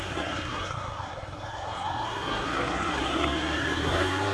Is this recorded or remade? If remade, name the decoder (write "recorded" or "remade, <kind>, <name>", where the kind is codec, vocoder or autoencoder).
remade, codec, SNAC